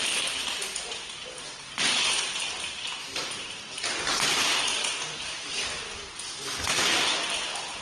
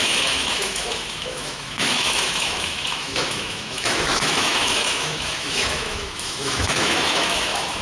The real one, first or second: first